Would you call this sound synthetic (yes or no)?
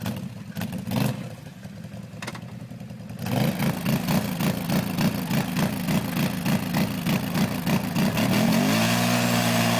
no